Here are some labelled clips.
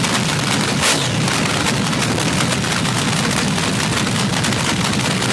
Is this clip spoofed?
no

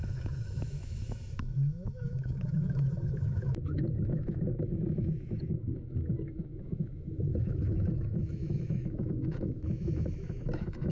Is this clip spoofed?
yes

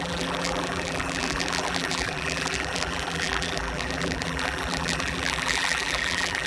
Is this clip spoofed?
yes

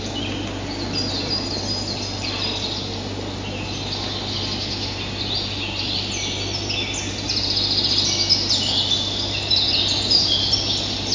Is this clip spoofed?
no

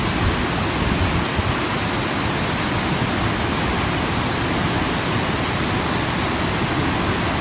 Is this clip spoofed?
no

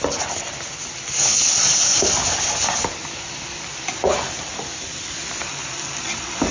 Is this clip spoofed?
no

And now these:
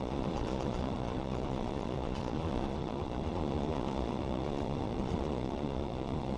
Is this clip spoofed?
yes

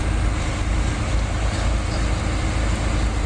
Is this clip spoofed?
no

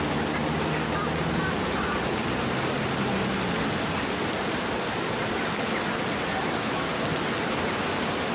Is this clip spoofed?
no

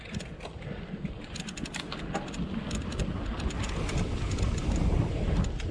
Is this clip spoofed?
no